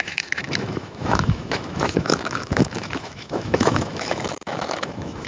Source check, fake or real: fake